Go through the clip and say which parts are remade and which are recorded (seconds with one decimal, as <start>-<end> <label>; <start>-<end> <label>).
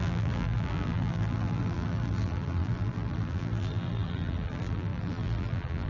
0.0-5.9 remade